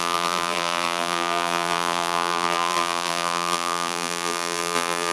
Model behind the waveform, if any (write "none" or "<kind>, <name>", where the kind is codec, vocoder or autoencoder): vocoder, BigVGAN v2